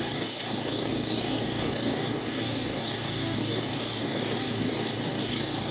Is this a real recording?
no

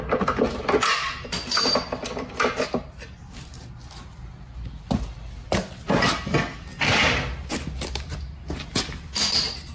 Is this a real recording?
yes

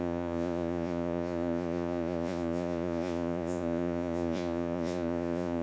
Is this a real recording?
no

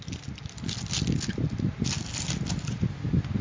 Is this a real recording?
yes